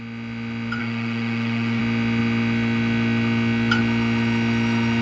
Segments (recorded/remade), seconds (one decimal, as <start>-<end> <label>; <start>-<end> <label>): 0.0-0.8 recorded; 0.8-1.8 remade; 1.8-5.0 recorded